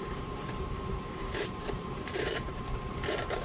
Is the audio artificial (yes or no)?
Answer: yes